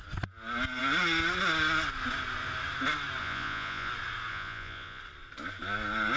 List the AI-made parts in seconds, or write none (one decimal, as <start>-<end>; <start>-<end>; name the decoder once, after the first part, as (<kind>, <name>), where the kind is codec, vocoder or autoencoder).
3.2-3.9 (vocoder, Vocos); 4.3-5.0